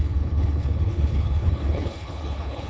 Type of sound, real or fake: fake